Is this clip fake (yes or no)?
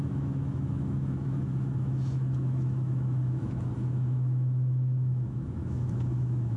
yes